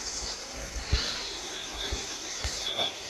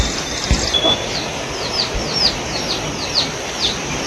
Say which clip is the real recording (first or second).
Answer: second